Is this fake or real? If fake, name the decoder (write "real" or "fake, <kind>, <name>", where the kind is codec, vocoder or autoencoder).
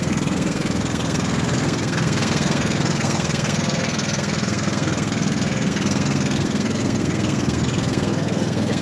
fake, codec, SNAC